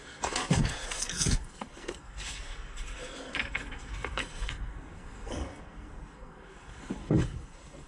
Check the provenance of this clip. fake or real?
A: fake